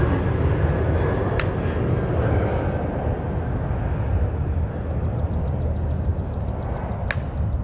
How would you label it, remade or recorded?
recorded